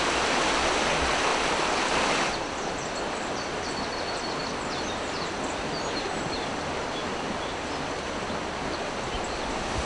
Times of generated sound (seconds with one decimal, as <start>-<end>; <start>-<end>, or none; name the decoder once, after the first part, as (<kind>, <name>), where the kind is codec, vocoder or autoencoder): 1.3-3.0 (vocoder, BigVGAN v2)